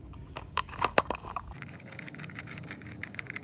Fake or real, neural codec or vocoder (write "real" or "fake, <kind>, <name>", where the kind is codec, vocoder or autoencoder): fake, codec, DAC